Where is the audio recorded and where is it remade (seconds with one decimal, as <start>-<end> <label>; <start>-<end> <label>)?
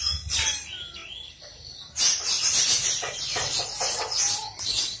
0.0-5.0 recorded